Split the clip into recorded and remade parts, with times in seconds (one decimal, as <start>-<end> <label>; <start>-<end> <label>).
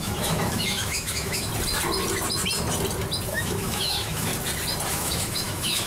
0.0-1.5 remade; 1.5-3.3 recorded; 3.3-4.3 remade; 4.3-4.9 recorded; 4.9-5.9 remade